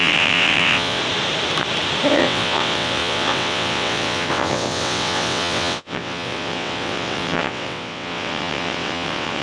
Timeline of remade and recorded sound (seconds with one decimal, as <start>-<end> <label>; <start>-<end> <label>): 0.0-1.0 remade; 1.0-2.1 recorded; 2.1-9.4 remade